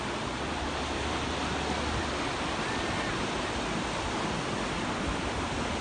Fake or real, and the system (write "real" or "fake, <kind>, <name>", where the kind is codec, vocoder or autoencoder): real